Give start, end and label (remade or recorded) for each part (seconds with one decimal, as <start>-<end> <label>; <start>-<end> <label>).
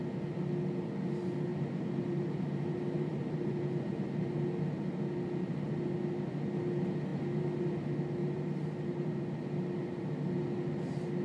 0.0-1.5 recorded; 1.5-4.4 remade; 4.4-7.1 recorded; 7.1-7.6 remade; 7.6-8.2 recorded; 8.2-9.5 remade; 9.5-11.2 recorded